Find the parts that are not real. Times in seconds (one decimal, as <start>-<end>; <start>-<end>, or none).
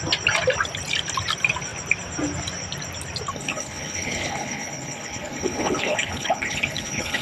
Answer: 3.3-7.2